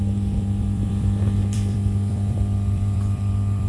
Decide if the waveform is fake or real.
fake